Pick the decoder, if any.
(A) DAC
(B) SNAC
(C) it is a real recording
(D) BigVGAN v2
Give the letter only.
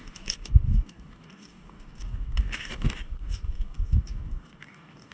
A